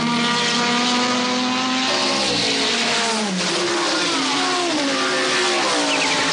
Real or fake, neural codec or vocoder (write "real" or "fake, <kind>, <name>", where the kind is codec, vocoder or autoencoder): real